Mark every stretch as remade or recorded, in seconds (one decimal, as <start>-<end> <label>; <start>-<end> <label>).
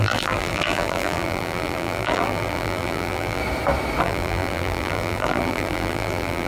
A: 0.0-3.4 remade; 3.4-4.0 recorded; 4.0-6.5 remade